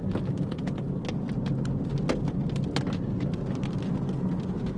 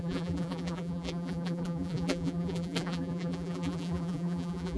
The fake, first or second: second